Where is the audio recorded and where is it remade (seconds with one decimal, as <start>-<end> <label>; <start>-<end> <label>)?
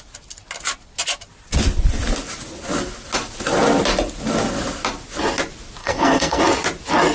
0.0-5.8 recorded; 5.8-6.4 remade; 6.4-7.1 recorded